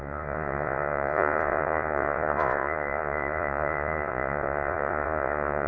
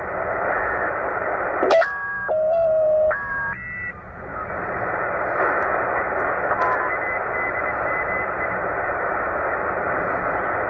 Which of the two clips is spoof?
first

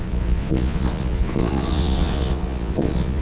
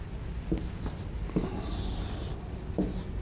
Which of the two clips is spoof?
first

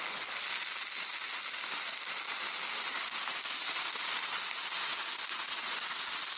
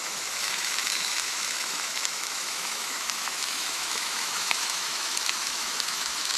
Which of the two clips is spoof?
second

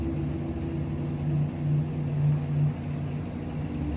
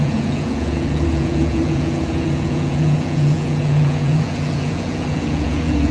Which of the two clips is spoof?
second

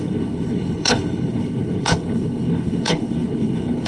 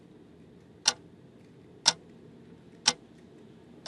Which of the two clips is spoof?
first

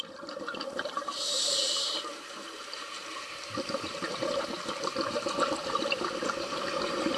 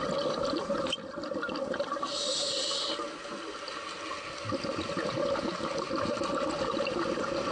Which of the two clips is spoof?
first